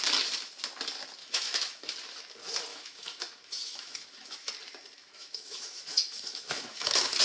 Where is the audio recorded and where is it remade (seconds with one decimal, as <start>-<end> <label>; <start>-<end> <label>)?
0.0-1.2 recorded; 1.2-1.9 remade; 1.9-2.7 recorded; 2.7-4.5 remade; 4.5-5.0 recorded; 5.0-7.2 remade